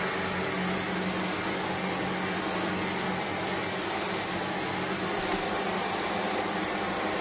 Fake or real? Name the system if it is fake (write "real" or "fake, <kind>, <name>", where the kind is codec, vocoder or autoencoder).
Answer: real